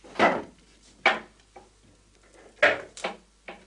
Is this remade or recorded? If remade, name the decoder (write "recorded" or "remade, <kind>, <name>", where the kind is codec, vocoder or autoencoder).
recorded